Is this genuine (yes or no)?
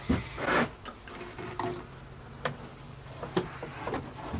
yes